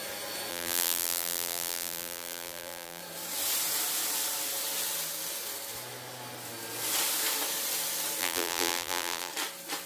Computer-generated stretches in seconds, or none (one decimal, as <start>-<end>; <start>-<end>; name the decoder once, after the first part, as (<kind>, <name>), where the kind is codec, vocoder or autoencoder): 0.5-3.0 (vocoder, BigVGAN v2); 8.2-9.3